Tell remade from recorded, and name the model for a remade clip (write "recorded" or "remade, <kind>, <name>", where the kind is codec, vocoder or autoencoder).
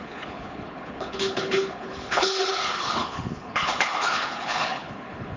remade, codec, HILCodec